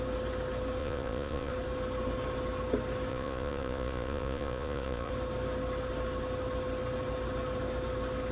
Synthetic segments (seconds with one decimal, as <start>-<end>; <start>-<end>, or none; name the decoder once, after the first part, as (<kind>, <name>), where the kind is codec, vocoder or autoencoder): 0.8-1.5 (vocoder, Vocos); 3.1-5.1